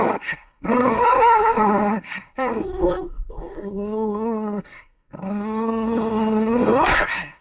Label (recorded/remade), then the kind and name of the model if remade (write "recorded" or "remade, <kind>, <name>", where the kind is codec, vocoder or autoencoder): remade, codec, SNAC